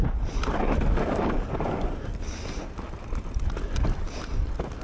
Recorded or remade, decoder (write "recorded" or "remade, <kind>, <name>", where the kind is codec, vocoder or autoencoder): recorded